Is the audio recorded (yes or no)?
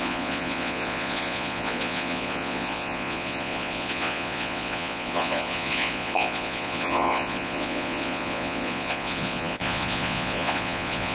no